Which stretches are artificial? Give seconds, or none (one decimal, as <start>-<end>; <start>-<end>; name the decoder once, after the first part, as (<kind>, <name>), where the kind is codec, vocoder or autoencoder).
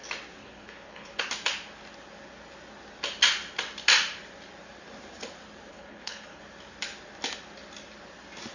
0.4-1.2 (codec, HILCodec); 5.7-6.4